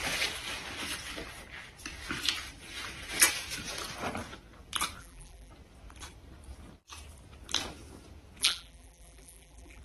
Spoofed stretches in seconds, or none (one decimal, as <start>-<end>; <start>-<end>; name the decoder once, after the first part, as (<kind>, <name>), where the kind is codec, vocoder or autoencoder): 5.0-5.5 (vocoder, BigVGAN v2); 8.4-9.8